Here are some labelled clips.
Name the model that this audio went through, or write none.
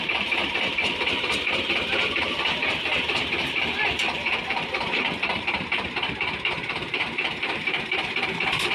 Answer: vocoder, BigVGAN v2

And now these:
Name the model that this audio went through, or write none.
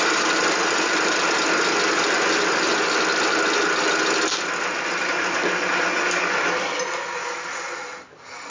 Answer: none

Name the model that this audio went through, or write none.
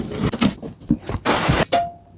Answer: none